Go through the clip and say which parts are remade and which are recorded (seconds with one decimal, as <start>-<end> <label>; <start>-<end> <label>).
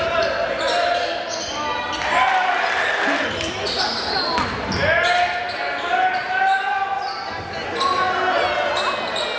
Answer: 0.0-9.4 recorded